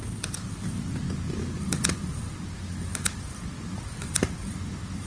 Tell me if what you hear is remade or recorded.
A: remade